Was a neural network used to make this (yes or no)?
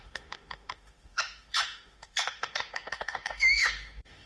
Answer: yes